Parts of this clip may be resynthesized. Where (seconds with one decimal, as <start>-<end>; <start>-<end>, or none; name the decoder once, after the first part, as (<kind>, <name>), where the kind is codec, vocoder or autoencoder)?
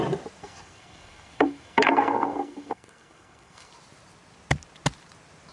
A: 0.4-3.7 (codec, SNAC)